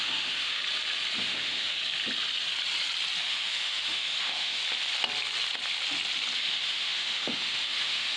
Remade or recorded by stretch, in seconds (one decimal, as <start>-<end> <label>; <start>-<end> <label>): 0.0-0.6 remade; 0.6-1.2 recorded; 1.2-1.8 remade; 1.8-3.2 recorded; 3.2-4.6 remade; 4.6-6.4 recorded; 6.4-8.2 remade